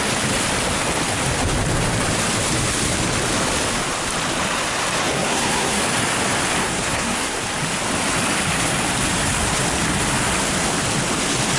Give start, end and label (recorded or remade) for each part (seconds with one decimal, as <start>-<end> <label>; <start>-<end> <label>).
0.0-5.1 recorded; 5.1-5.8 remade; 5.8-6.6 recorded; 6.6-7.4 remade; 7.4-11.6 recorded